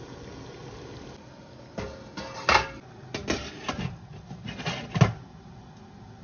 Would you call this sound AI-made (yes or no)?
no